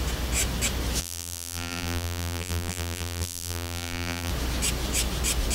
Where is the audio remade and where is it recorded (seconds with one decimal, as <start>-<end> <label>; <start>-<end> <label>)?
0.0-1.0 recorded; 1.0-4.3 remade; 4.3-5.5 recorded

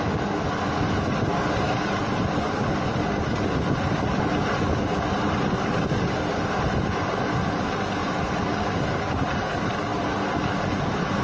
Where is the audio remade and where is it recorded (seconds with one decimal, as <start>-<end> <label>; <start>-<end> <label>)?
0.0-11.2 recorded

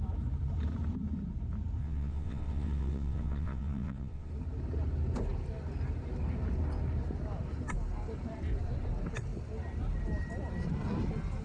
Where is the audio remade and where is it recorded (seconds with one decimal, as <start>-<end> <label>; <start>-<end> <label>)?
0.0-1.8 recorded; 1.8-4.3 remade; 4.3-11.4 recorded

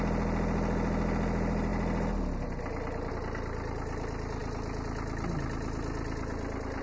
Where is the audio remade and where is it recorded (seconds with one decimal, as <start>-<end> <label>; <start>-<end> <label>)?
0.0-6.8 recorded

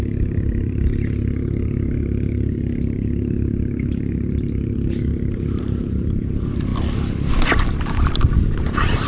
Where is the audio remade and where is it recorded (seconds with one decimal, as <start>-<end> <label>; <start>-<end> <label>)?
0.0-6.7 remade; 6.7-8.4 recorded; 8.4-9.1 remade

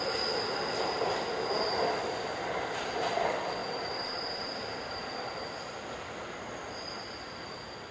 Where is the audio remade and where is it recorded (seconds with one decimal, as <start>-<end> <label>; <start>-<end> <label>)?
0.0-3.6 recorded; 3.6-5.6 remade; 5.6-7.9 recorded

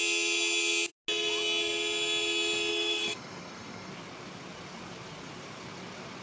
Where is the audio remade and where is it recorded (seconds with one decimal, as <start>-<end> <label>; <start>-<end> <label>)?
0.0-2.7 recorded; 2.7-3.9 remade; 3.9-6.2 recorded

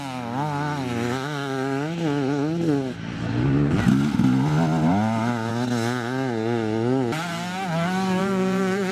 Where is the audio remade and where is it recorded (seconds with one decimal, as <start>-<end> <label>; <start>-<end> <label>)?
0.0-8.2 recorded; 8.2-8.9 remade